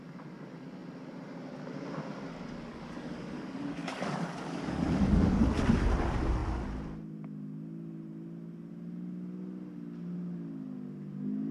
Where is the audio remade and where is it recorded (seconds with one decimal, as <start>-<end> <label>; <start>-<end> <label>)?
0.0-2.7 recorded; 2.7-5.5 remade; 5.5-11.5 recorded